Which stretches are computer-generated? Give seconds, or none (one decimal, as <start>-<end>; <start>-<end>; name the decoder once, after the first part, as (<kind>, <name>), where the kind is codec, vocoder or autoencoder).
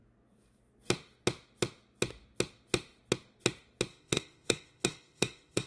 3.9-5.7 (autoencoder, DAC-VAE)